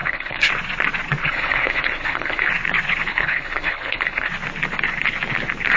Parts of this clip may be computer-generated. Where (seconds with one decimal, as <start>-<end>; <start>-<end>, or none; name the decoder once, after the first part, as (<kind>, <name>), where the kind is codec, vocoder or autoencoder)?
0.0-0.5 (codec, HILCodec); 1.2-2.5; 3.1-4.3